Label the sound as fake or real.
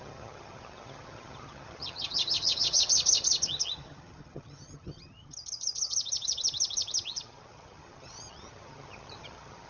fake